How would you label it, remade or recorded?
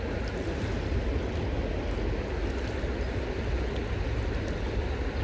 recorded